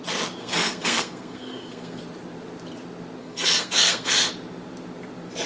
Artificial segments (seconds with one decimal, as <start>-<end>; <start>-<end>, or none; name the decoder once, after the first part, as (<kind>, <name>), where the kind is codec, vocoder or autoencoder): 0.4-2.0 (codec, SNAC); 3.2-4.3